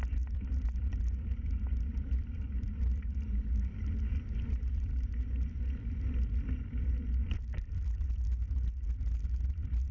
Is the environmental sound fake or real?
fake